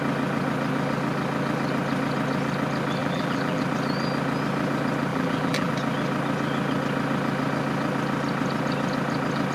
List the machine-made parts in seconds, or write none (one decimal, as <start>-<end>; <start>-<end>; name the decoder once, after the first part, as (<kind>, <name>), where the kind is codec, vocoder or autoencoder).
3.0-3.6 (vocoder, BigVGAN v2); 5.1-5.7